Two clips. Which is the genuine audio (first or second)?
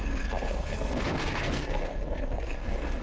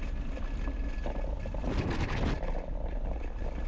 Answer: second